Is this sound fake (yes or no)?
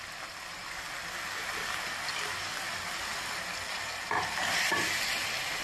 no